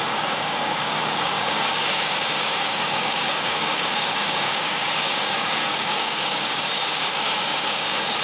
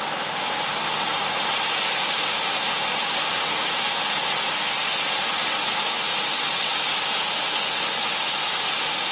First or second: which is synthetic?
first